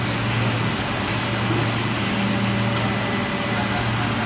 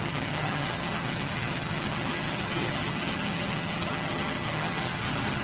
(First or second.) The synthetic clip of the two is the second